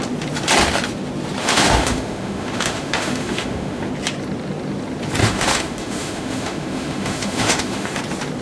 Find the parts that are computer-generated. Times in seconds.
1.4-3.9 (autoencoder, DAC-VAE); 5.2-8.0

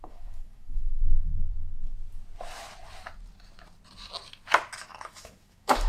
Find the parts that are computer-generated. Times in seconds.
0.0-1.3 (autoencoder, DAC-VAE); 4.8-5.9

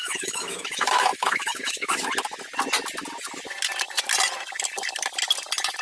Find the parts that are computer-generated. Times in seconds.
0.0-2.0 (autoencoder, DAC-VAE)

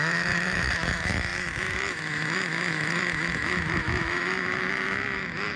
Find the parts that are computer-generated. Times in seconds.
0.0-5.6 (autoencoder, DAC-VAE)